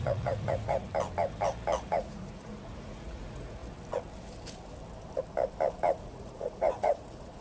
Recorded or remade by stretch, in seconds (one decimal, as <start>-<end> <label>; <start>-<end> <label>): 0.0-0.9 remade; 0.9-1.8 recorded; 1.8-3.6 remade; 3.6-6.0 recorded; 6.0-7.4 remade